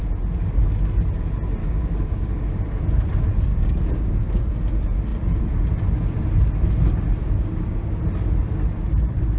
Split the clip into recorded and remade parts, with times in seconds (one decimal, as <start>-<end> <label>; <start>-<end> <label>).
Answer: 0.0-1.6 recorded; 1.6-2.4 remade; 2.4-3.5 recorded; 3.5-4.4 remade; 4.4-7.2 recorded; 7.2-8.0 remade; 8.0-9.4 recorded